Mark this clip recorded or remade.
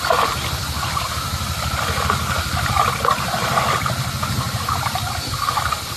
recorded